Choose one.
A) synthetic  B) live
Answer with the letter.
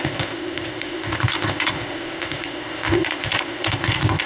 A